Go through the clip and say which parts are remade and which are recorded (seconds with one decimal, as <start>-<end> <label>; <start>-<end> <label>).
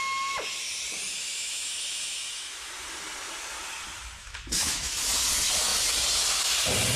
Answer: 0.0-1.1 recorded; 1.1-2.7 remade; 2.7-4.2 recorded; 4.2-4.9 remade; 4.9-7.0 recorded